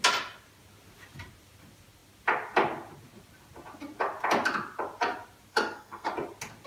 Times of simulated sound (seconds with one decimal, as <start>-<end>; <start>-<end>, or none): 5.5-6.1